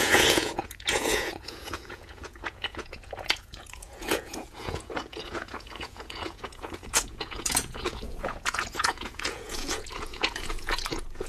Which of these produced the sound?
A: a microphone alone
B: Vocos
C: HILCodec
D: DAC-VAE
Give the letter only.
B